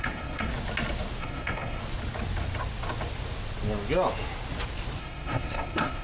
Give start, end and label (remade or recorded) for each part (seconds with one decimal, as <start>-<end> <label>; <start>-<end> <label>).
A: 0.0-0.5 remade; 0.5-1.2 recorded; 1.2-1.8 remade; 1.8-5.0 recorded; 5.0-6.0 remade